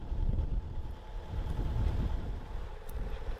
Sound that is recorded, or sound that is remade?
remade